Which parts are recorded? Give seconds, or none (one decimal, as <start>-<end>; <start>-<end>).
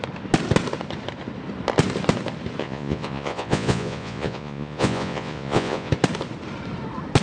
0.0-2.6; 5.9-7.2